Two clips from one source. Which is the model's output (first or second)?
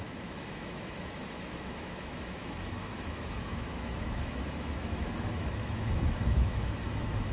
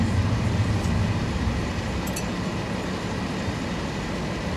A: first